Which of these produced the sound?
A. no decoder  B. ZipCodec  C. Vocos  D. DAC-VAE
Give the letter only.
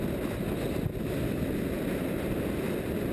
A